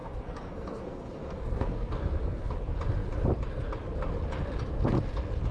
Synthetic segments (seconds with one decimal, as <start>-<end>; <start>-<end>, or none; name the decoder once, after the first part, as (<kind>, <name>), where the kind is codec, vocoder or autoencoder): 0.0-2.5 (codec, SNAC)